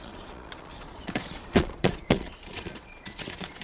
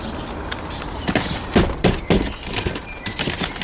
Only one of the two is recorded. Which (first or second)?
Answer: second